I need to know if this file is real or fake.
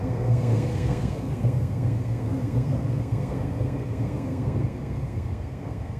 fake